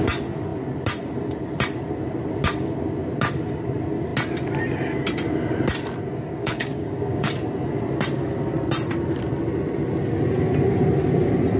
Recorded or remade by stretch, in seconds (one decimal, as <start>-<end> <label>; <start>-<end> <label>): 0.0-6.4 recorded; 6.4-7.3 remade; 7.3-11.6 recorded